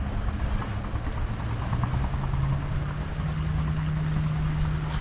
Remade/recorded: recorded